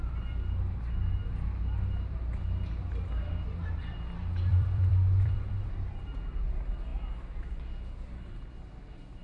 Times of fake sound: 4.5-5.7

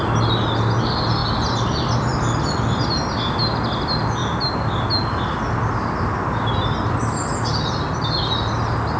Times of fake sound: none

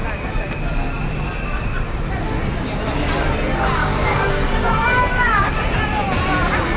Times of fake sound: 3.8-5.5

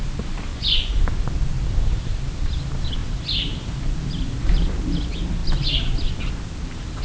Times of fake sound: 0.5-1.0

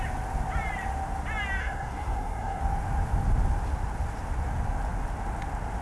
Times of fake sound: 1.6-2.6

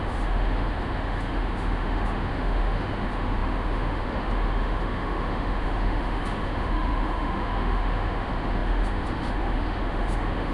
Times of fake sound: 0.0-10.5

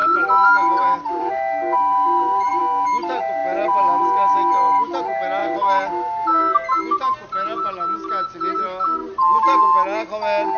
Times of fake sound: 0.0-2.6; 3.4-4.0; 5.4-6.4; 9.0-9.6